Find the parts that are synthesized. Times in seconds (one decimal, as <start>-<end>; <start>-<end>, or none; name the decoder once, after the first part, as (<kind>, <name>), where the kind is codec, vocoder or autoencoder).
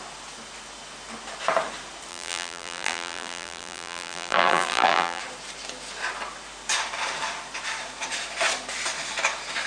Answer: 2.1-5.2 (vocoder, BigVGAN v2)